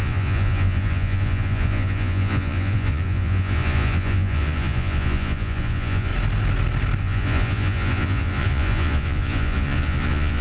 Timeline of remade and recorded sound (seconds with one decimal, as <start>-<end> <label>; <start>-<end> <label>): 0.0-6.1 remade; 6.1-7.0 recorded; 7.0-10.4 remade